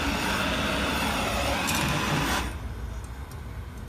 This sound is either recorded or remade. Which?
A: recorded